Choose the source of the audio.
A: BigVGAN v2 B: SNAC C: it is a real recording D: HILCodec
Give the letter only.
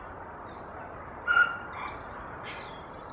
A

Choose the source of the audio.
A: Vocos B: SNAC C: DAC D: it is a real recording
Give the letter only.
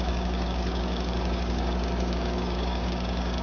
C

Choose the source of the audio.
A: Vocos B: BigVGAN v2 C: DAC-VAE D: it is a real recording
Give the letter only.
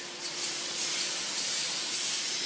D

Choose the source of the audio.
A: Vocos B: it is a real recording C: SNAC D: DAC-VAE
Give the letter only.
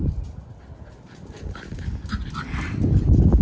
B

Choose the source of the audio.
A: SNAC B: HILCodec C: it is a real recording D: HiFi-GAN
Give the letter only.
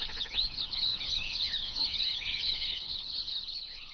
B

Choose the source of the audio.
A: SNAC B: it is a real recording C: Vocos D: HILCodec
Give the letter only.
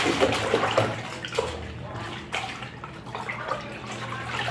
B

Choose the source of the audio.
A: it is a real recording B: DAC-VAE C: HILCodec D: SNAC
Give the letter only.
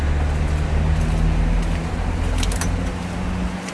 A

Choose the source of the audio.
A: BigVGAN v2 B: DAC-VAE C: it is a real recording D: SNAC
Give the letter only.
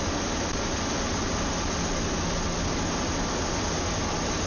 C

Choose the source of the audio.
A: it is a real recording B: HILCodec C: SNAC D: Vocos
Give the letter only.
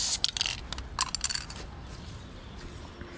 A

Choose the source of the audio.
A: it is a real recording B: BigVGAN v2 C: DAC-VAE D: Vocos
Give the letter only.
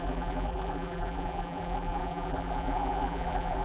B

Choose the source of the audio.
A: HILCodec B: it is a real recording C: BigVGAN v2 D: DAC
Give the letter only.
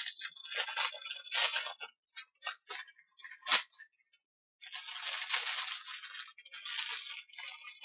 B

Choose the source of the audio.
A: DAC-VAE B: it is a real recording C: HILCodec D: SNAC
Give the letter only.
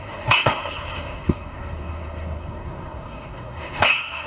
D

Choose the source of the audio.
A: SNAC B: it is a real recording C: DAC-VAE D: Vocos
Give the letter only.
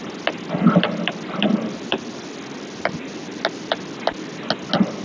B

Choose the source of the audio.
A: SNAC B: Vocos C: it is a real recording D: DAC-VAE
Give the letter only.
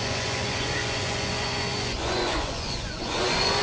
B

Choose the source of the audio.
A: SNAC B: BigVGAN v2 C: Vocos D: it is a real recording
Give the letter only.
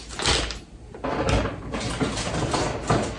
D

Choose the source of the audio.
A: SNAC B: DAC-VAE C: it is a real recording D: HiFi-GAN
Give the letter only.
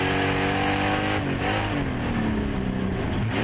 C